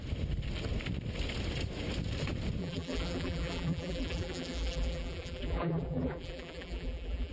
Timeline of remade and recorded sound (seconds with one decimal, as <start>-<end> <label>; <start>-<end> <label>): 0.0-2.6 recorded; 2.6-7.3 remade